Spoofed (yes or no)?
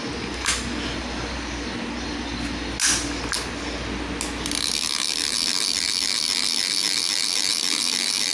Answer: no